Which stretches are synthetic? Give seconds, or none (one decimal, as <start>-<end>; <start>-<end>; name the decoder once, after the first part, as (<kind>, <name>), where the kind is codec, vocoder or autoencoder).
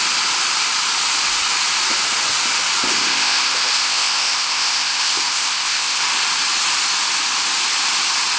2.9-6.0 (codec, ZipCodec)